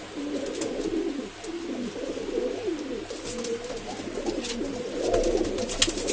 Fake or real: real